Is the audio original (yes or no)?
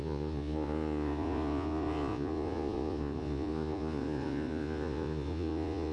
no